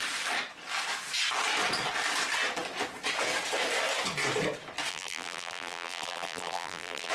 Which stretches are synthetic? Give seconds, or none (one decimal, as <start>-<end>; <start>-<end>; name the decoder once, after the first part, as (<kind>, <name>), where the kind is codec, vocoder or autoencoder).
4.9-7.1 (vocoder, BigVGAN v2)